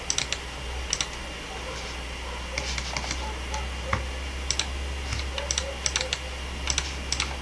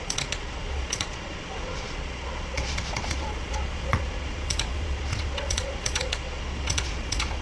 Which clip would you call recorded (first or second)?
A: first